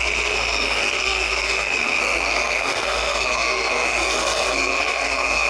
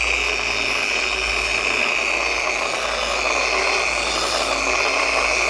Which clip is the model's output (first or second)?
first